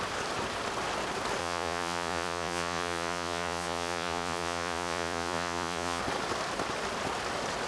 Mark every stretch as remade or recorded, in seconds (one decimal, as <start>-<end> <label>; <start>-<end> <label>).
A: 0.0-1.4 recorded; 1.4-6.0 remade; 6.0-7.7 recorded